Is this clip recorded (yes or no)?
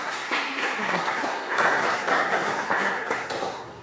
no